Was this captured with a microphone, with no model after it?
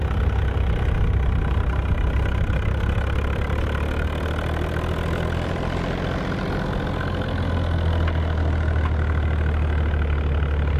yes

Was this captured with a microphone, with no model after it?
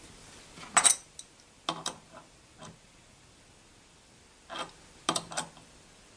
yes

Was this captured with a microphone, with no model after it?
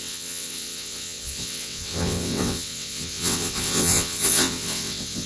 no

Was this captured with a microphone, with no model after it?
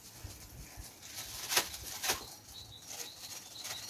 yes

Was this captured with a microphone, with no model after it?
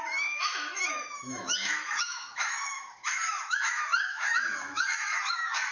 no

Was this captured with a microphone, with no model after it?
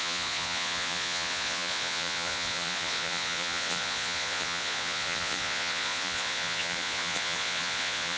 no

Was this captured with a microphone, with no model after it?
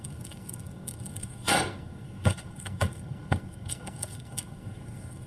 no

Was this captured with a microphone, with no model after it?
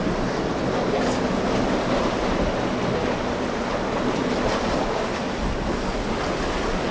yes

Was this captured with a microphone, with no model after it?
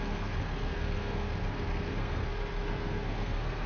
no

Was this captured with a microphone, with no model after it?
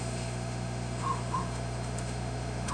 no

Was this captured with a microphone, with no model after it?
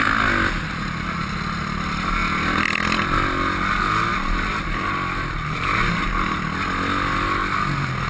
yes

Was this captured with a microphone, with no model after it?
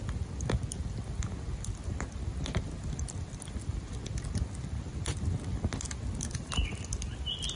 yes